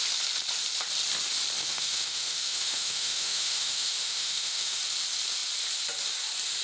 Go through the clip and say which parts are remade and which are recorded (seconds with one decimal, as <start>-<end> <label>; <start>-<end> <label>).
0.0-1.6 recorded; 1.6-4.8 remade; 4.8-6.6 recorded